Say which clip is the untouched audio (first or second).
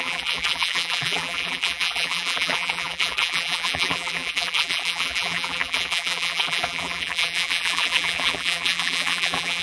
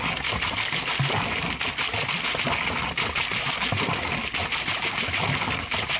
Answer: second